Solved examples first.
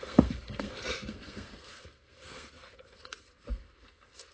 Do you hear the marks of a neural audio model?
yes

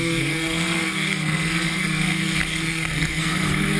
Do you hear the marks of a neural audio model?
yes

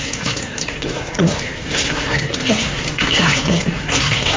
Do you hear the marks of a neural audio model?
yes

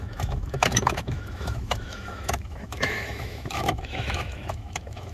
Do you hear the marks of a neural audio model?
yes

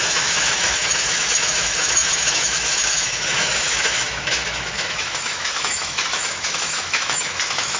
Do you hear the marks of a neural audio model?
yes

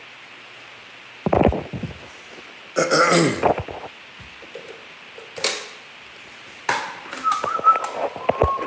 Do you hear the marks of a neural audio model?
no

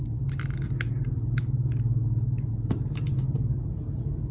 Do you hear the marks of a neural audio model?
no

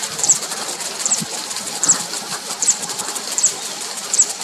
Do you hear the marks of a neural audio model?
no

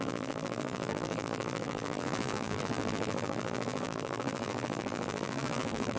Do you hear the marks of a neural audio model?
yes